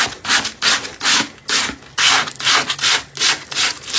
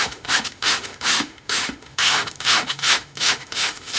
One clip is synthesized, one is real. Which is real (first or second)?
first